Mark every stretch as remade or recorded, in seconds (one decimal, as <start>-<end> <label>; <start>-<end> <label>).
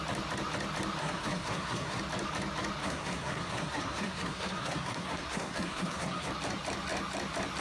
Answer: 0.0-1.0 recorded; 1.0-2.0 remade; 2.0-2.8 recorded; 2.8-6.3 remade; 6.3-7.6 recorded